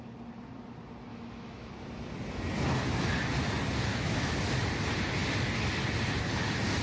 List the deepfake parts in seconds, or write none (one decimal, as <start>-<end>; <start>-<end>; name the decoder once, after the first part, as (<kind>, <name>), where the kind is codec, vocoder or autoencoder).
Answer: 1.1-1.7 (autoencoder, DAC-VAE); 3.9-4.4